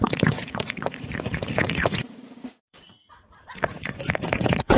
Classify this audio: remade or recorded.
remade